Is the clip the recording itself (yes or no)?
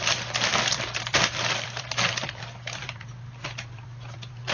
no